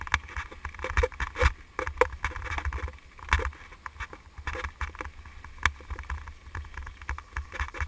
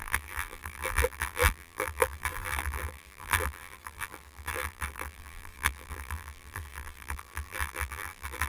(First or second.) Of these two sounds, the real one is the first